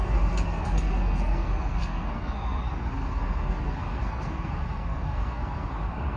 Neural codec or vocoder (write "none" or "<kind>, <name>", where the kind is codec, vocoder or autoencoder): codec, SNAC